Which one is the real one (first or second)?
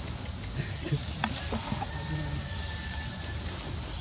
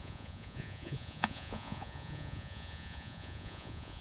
first